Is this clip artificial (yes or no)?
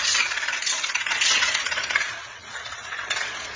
yes